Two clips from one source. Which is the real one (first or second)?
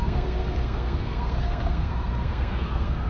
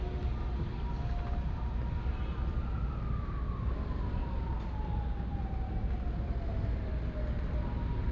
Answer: second